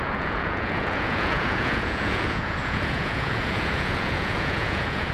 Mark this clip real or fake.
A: fake